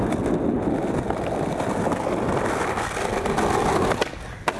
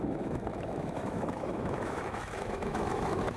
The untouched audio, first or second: first